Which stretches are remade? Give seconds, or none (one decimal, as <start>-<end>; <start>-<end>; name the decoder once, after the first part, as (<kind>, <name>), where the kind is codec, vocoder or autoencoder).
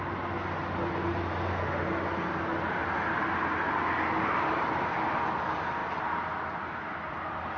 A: none